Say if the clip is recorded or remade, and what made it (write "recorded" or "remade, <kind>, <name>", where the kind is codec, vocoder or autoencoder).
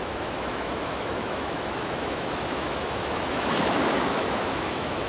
remade, autoencoder, DAC-VAE